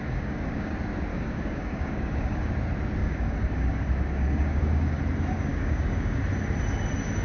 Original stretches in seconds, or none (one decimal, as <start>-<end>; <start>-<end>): 0.7-1.1; 2.5-3.0; 5.0-5.5; 6.2-7.2